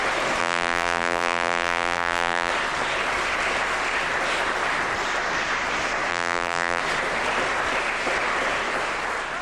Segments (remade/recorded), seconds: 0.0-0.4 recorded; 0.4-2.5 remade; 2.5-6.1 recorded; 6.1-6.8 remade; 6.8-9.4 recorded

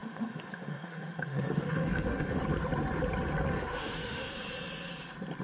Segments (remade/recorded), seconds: 0.0-2.4 remade; 2.4-3.5 recorded; 3.5-4.3 remade; 4.3-5.4 recorded

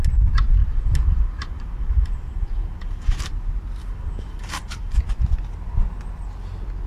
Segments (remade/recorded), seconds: 0.0-0.6 recorded; 0.6-3.2 remade; 3.2-3.8 recorded; 3.8-4.9 remade; 4.9-6.9 recorded

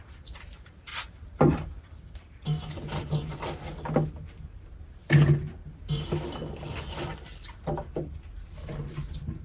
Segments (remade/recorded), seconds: 0.0-9.4 recorded

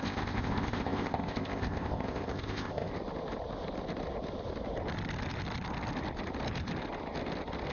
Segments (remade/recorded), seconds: 0.0-2.9 remade; 2.9-7.7 recorded

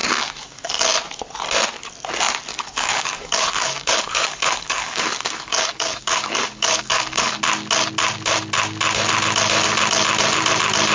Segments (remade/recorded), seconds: 0.0-0.7 remade; 0.7-2.5 recorded; 2.5-7.4 remade; 7.4-10.9 recorded

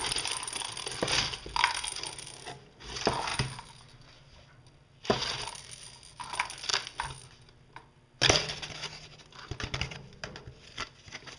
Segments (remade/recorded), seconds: 0.0-11.4 recorded